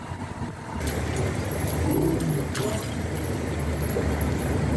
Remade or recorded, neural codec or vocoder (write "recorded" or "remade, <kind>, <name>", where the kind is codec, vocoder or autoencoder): recorded